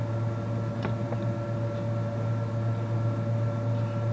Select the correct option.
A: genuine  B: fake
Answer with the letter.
A